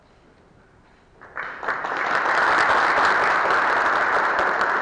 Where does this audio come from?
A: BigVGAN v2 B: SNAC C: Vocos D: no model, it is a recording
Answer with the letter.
D